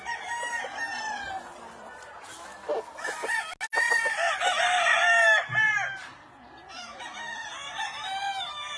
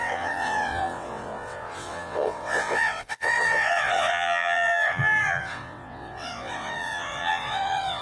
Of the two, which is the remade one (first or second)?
second